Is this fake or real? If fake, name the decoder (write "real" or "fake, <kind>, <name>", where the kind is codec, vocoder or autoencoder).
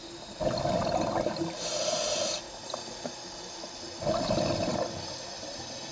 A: real